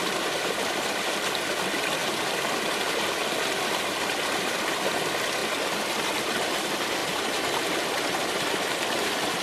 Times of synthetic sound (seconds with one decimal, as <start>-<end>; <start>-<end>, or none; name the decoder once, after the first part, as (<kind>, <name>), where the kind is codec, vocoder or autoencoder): 0.0-5.4 (vocoder, BigVGAN v2); 6.2-9.4